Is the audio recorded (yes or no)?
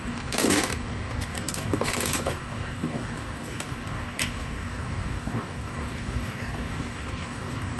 no